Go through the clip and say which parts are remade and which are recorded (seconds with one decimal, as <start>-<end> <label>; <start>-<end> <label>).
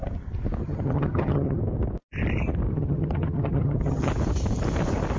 0.0-0.6 recorded; 0.6-1.6 remade; 1.6-2.7 recorded; 2.7-4.1 remade; 4.1-5.2 recorded